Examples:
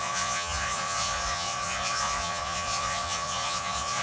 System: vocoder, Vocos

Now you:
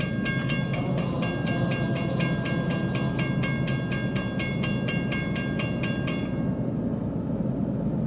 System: none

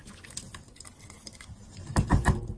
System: vocoder, BigVGAN v2